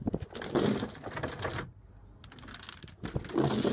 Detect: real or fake real